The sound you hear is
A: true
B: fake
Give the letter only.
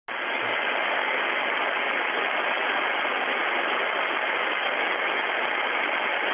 A